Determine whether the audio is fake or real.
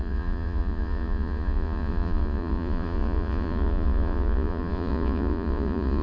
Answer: fake